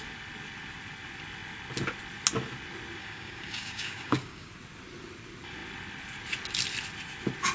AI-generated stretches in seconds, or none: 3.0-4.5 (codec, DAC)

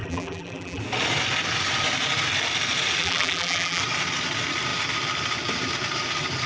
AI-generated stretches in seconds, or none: 0.0-0.8 (vocoder, BigVGAN v2); 3.0-3.8

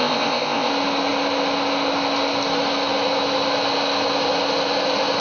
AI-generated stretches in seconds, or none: 0.0-0.7 (codec, ZipCodec)

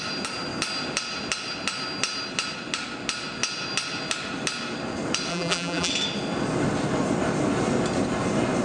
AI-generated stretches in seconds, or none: 5.3-5.9 (vocoder, BigVGAN v2)

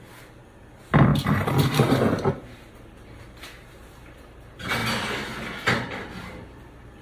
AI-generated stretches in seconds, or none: 0.0-1.1 (vocoder, BigVGAN v2); 2.1-4.8; 6.1-7.0

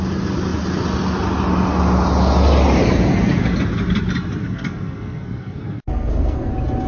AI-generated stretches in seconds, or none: 4.4-6.5 (codec, SNAC)

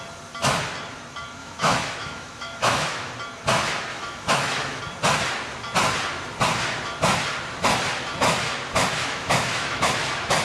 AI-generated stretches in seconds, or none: 1.4-3.1 (autoencoder, DAC-VAE); 3.9-4.8; 9.0-9.9

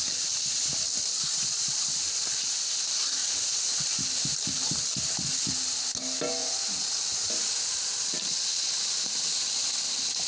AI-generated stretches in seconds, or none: 3.2-3.8 (vocoder, Vocos); 6.4-7.0